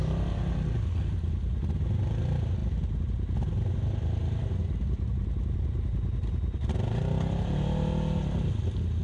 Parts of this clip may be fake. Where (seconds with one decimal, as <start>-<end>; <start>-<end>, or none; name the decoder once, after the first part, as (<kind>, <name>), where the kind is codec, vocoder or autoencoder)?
none